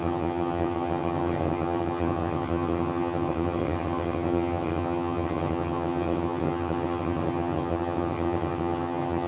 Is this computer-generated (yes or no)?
yes